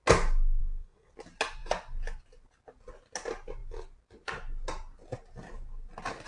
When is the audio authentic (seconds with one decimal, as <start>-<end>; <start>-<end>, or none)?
0.0-0.6; 1.1-6.3